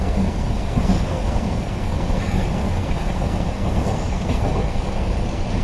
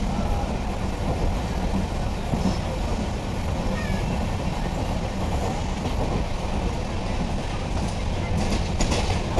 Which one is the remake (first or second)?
first